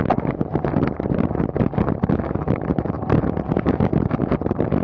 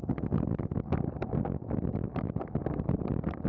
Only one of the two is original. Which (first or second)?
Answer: second